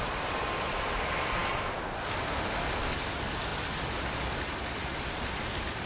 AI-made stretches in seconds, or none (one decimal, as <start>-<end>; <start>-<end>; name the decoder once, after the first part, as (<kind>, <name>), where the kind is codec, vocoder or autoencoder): 1.4-2.7 (vocoder, BigVGAN v2); 3.5-5.1